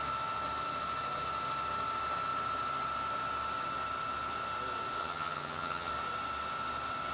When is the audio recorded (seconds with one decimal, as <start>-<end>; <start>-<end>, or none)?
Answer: 0.0-5.0; 5.9-7.1